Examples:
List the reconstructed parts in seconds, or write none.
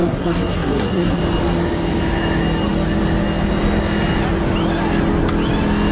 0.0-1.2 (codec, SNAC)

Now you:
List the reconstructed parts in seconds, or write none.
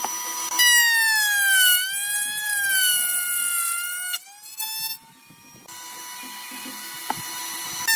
none